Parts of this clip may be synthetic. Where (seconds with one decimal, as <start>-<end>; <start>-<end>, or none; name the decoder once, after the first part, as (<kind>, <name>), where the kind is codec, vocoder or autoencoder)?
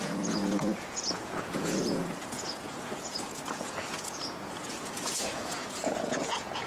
0.0-6.7 (vocoder, Vocos)